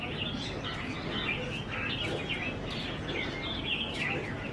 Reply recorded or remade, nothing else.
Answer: recorded